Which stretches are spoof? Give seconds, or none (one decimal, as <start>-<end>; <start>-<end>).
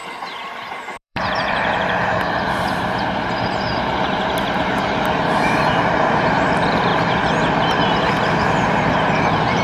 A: 0.0-6.9; 7.4-9.6